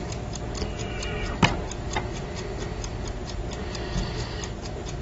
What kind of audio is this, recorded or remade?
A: recorded